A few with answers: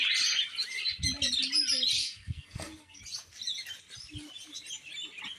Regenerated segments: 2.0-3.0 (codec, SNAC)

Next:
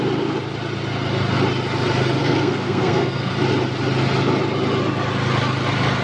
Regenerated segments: 2.2-3.3 (codec, SNAC)

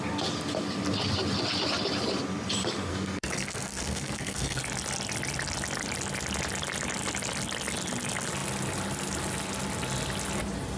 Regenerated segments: 2.9-4.6 (codec, SNAC)

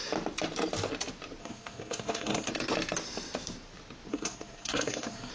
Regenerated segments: 1.4-2.5 (codec, SNAC); 4.1-5.3

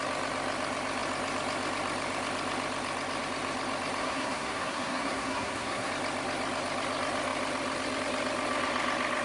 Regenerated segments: 4.0-5.9 (codec, SNAC)

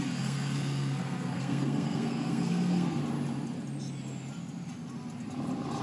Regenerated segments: 0.0-3.0 (codec, SNAC)